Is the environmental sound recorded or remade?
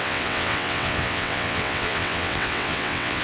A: remade